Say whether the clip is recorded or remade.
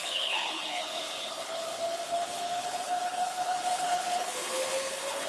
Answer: remade